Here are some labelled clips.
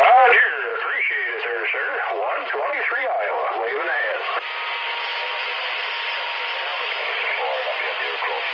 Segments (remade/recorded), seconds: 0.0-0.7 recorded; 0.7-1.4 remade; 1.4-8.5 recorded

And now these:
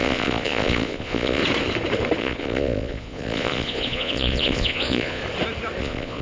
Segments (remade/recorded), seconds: 0.0-1.4 remade; 1.4-2.2 recorded; 2.2-5.2 remade; 5.2-5.8 recorded; 5.8-6.2 remade

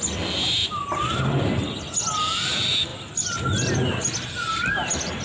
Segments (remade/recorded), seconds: 0.0-5.2 recorded

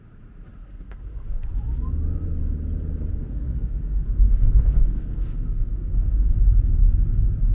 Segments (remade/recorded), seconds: 0.0-0.6 recorded; 0.6-1.5 remade; 1.5-3.1 recorded; 3.1-6.3 remade; 6.3-7.5 recorded

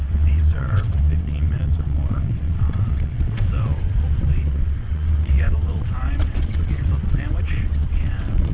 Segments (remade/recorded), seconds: 0.0-8.5 remade

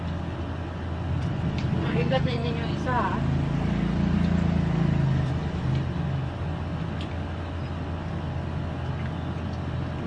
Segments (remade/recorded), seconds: 0.0-1.9 recorded; 1.9-2.5 remade; 2.5-10.1 recorded

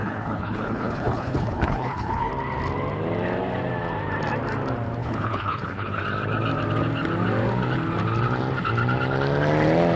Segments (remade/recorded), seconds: 0.0-2.3 remade; 2.3-5.0 recorded; 5.0-6.0 remade; 6.0-10.0 recorded

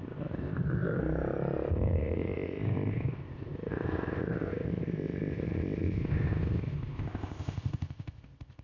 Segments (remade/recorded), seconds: 0.0-1.0 remade; 1.0-1.7 recorded; 1.7-8.6 remade